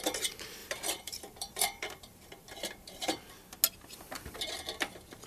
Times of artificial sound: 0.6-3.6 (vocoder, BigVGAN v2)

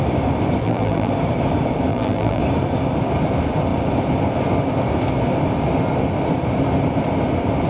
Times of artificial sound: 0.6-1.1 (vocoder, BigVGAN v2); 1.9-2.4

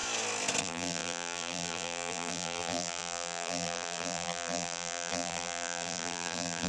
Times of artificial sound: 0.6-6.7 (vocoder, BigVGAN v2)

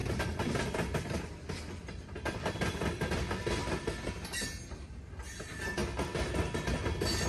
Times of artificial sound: 0.0-3.1 (vocoder, BigVGAN v2); 3.6-4.1